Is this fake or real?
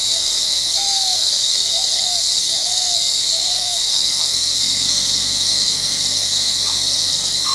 fake